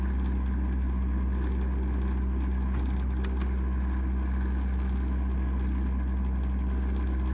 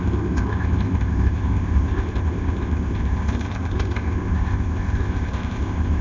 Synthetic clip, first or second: second